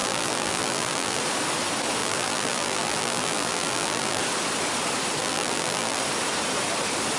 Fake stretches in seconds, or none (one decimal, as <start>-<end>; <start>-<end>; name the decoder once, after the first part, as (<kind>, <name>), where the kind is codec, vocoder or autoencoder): 0.0-1.2 (vocoder, BigVGAN v2); 2.0-4.2; 5.2-6.0